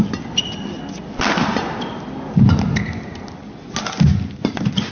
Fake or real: real